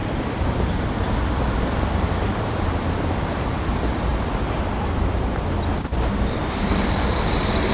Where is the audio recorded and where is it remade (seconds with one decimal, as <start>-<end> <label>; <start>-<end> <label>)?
0.0-4.1 remade; 4.1-6.1 recorded; 6.1-7.7 remade